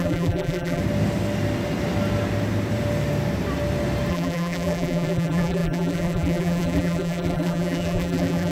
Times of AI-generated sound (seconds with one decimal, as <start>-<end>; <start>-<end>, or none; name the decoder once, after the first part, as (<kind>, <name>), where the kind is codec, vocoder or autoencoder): 0.0-0.8 (vocoder, BigVGAN v2); 4.1-8.5